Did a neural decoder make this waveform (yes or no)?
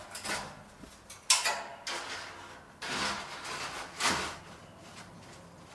no